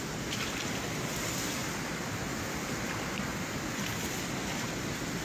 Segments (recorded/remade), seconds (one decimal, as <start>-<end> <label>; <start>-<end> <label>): 0.0-1.6 remade; 1.6-2.4 recorded; 2.4-3.3 remade; 3.3-4.0 recorded; 4.0-5.2 remade